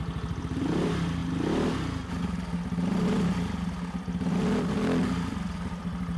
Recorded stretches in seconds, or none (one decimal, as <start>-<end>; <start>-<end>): 1.2-4.3